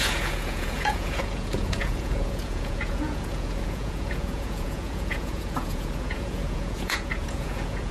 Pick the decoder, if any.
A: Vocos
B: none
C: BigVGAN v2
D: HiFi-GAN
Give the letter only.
A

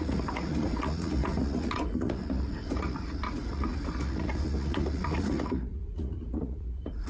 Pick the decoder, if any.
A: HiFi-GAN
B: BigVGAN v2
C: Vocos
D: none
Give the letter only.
C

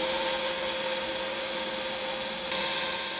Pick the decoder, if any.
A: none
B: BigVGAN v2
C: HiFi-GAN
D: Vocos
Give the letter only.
A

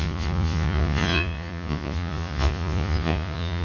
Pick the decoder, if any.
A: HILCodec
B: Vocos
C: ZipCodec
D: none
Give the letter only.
B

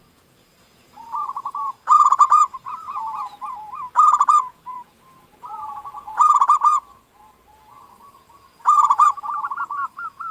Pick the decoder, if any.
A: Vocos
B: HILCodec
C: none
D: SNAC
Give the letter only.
A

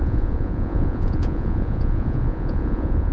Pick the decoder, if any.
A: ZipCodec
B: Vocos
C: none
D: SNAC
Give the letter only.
B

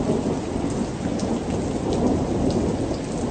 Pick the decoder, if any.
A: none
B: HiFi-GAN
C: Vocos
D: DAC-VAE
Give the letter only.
A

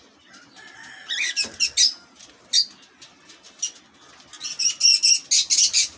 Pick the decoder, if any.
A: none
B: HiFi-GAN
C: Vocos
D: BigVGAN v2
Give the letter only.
A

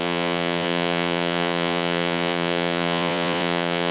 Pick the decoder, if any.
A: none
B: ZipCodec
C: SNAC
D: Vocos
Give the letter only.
D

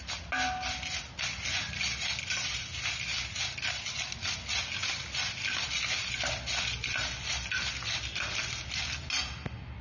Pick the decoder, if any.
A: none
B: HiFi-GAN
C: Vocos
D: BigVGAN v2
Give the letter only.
A